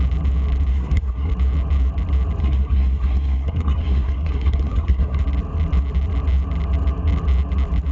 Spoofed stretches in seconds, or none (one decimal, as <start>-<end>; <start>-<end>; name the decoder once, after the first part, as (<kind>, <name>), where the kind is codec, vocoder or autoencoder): 0.7-1.3 (codec, SNAC); 2.4-5.2